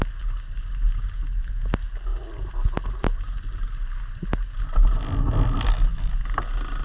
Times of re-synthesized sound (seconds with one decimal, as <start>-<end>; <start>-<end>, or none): none